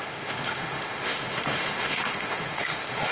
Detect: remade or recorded remade